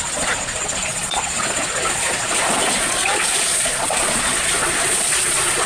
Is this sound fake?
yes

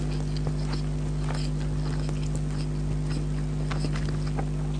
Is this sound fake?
no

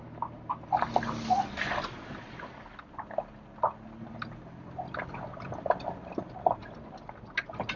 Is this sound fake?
no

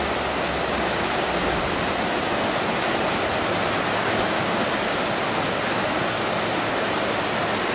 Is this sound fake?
no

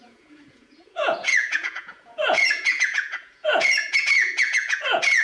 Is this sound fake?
yes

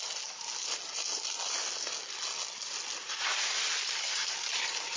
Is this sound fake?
no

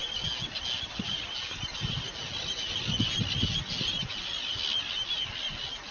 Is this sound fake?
no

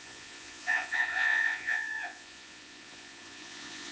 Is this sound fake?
yes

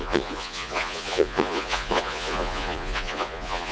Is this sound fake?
yes